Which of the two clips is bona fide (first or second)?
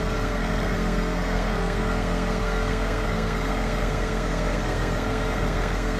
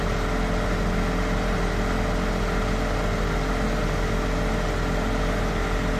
second